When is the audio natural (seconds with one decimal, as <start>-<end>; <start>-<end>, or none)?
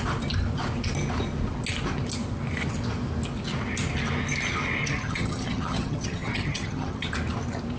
0.0-4.8; 7.1-7.8